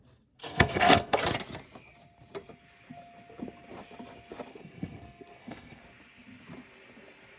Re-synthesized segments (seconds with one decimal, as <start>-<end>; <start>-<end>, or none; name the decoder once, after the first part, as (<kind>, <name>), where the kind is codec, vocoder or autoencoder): 0.4-1.2 (codec, SNAC); 4.5-5.8